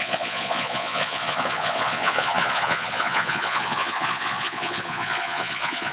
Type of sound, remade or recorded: remade